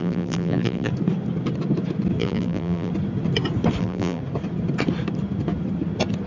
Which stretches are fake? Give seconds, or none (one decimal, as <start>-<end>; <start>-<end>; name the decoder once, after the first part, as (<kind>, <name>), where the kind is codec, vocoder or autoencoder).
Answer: 0.0-0.9 (vocoder, BigVGAN v2); 2.2-2.9; 3.8-4.2